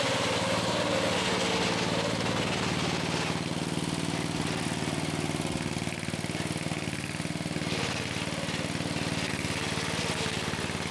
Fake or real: real